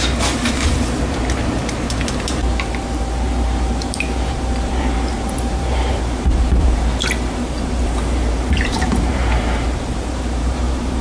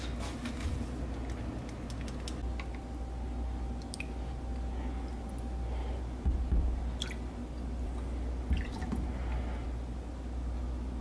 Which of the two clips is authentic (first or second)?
second